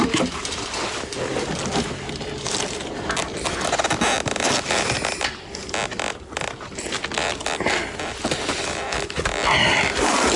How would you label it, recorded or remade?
recorded